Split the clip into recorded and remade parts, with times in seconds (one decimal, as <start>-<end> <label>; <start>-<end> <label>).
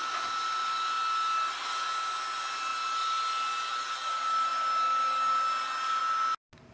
0.0-6.7 recorded